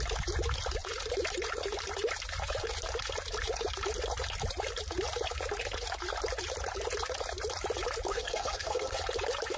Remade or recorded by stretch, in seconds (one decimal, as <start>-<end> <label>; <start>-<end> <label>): 0.0-8.1 recorded; 8.1-9.0 remade; 9.0-9.6 recorded